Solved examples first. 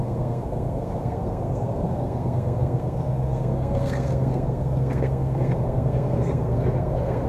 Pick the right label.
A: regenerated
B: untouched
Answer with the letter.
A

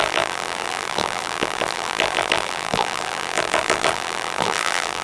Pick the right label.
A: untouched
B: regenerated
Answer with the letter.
B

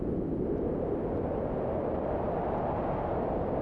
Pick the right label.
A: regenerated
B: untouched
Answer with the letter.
B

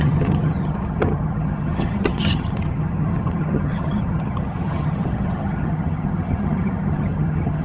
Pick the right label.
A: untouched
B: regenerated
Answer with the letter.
B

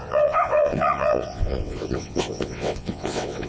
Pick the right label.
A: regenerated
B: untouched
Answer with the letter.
A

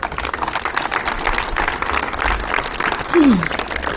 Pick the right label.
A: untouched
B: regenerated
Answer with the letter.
A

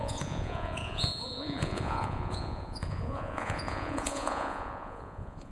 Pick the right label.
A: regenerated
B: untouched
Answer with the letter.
A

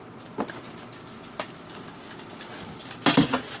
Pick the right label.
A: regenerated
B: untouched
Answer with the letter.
B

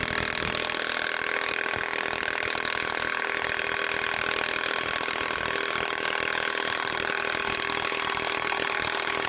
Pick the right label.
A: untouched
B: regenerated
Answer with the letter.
A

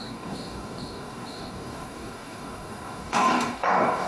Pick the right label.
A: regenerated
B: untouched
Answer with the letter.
A